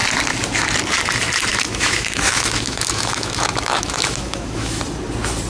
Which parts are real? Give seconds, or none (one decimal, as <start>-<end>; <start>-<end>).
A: 0.0-1.5; 4.8-5.5